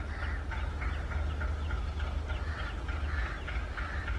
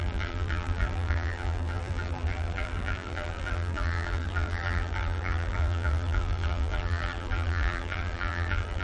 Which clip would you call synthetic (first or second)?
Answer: second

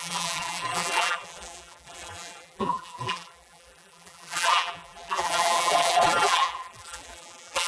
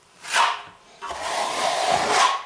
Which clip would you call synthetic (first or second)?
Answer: first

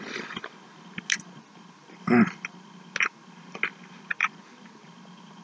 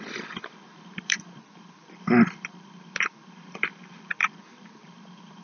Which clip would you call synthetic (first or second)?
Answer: second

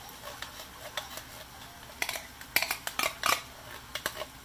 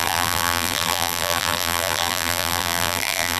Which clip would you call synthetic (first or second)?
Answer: second